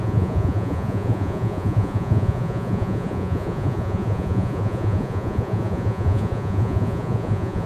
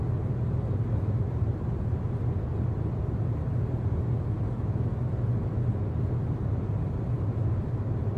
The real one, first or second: second